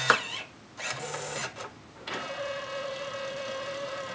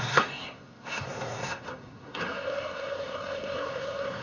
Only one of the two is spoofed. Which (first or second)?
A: second